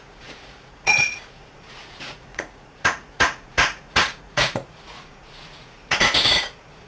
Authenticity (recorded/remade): remade